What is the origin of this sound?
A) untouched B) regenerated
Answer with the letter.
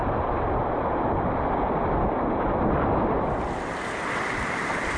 A